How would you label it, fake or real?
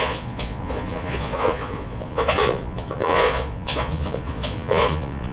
fake